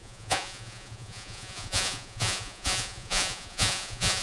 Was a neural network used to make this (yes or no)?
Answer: yes